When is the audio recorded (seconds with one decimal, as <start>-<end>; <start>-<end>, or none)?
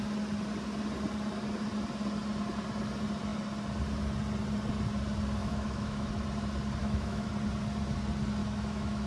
0.0-5.4; 6.1-6.8; 7.3-8.4